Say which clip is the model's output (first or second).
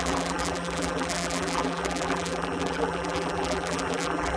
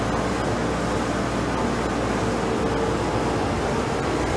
first